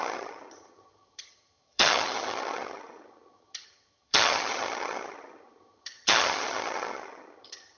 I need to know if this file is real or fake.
fake